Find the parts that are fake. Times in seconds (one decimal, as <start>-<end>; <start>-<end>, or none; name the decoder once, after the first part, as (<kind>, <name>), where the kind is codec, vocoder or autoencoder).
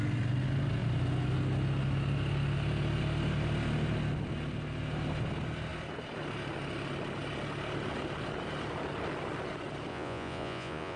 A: 9.9-11.0 (vocoder, Vocos)